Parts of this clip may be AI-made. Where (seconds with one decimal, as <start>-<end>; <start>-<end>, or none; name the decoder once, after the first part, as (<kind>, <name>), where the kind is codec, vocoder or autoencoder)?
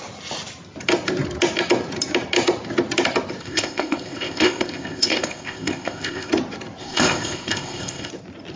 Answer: 3.4-6.3 (codec, ZipCodec); 6.8-8.1